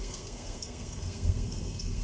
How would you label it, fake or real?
fake